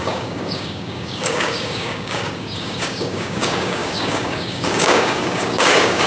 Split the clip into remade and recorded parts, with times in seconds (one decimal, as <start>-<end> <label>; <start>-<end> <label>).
0.0-6.1 remade